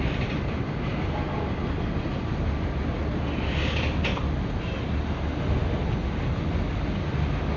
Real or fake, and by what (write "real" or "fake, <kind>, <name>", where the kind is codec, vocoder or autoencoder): real